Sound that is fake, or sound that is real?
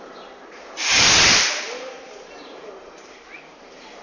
fake